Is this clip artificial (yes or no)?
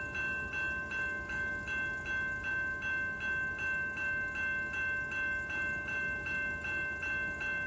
no